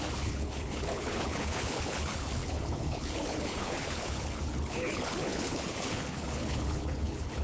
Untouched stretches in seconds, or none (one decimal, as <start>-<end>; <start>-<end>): none